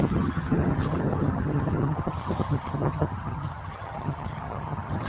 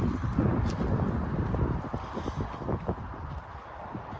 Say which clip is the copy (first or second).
first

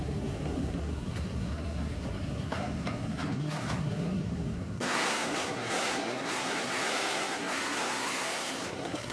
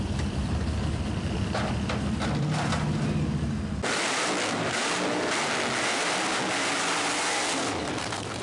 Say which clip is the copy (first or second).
first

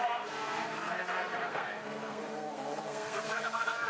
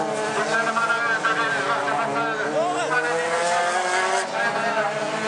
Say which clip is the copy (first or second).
first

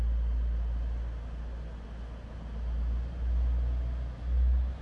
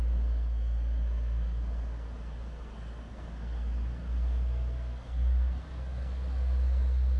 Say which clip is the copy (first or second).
second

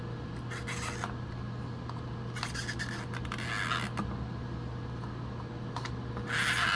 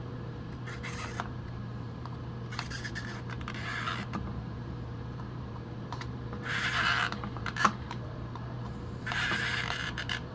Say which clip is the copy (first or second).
second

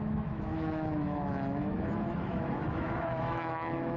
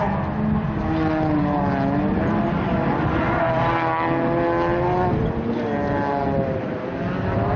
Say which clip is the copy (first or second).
first